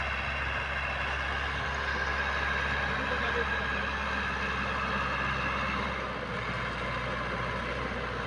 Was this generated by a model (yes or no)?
no